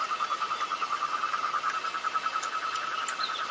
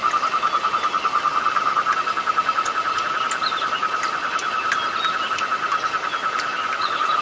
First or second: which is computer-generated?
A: first